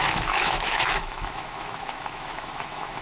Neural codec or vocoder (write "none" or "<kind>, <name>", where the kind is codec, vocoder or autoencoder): autoencoder, DAC-VAE